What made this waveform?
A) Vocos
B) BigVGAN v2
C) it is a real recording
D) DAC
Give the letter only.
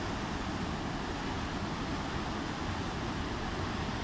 C